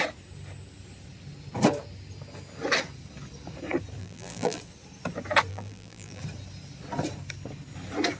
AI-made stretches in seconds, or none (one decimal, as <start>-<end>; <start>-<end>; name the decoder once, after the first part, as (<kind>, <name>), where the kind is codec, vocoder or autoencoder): 4.0-4.6 (vocoder, BigVGAN v2); 5.5-6.2

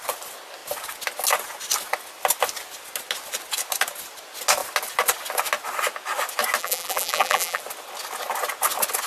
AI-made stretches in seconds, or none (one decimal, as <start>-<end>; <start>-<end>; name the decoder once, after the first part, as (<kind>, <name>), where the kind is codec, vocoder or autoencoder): 6.6-7.6 (vocoder, BigVGAN v2)

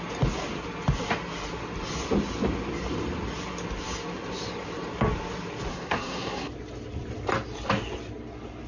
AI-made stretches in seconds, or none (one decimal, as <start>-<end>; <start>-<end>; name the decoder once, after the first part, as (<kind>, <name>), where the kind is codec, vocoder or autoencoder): 5.7-6.5 (codec, SNAC)

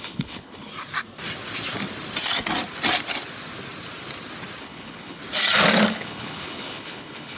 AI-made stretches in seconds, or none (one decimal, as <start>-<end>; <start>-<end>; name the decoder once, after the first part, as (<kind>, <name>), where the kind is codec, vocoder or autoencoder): 0.0-0.7 (codec, HILCodec); 4.6-5.2; 5.9-7.4

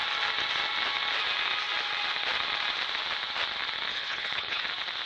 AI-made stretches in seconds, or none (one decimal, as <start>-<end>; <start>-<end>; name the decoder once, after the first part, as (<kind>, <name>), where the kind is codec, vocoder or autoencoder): 3.9-4.6 (codec, HILCodec)

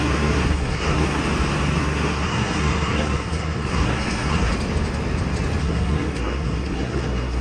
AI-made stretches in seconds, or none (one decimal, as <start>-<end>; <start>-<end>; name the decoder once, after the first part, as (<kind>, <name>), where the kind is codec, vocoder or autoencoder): 0.0-1.2 (codec, SNAC); 1.8-4.5; 5.6-7.4

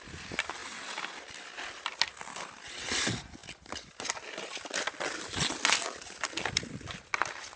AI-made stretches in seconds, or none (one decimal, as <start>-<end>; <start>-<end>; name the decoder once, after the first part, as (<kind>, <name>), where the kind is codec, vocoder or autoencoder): none